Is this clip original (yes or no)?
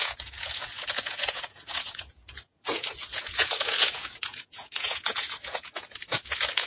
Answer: no